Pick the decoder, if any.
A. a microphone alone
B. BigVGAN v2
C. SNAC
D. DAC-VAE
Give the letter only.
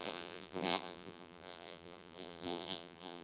B